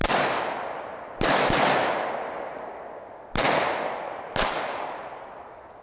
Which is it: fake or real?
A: real